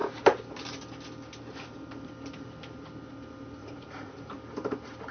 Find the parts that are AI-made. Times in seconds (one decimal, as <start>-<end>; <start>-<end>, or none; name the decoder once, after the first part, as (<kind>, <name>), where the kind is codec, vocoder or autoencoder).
3.6-4.3 (vocoder, Vocos)